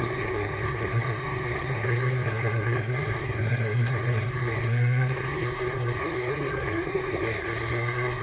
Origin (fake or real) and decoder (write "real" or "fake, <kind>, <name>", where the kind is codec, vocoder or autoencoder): fake, codec, SNAC